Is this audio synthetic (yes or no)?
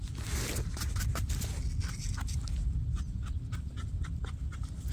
no